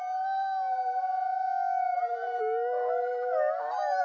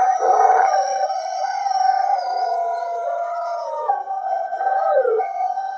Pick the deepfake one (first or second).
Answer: second